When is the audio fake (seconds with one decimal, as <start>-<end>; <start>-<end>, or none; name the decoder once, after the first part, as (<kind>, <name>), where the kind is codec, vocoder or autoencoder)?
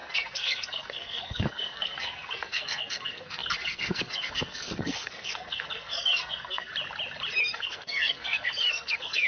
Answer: 0.0-6.7 (codec, SNAC); 7.4-9.3